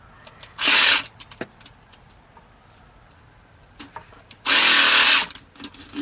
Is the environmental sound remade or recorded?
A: recorded